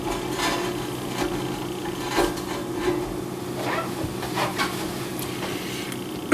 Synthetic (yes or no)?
no